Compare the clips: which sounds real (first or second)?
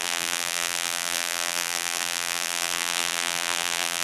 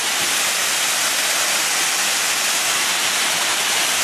second